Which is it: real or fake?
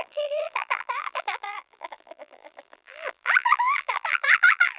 fake